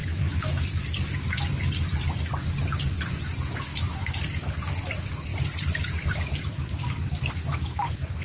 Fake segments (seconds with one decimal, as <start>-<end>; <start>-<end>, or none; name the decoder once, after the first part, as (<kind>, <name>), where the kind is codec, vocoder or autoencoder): 0.0-0.6 (autoencoder, DAC-VAE)